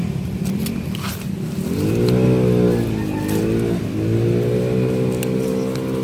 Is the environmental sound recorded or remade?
recorded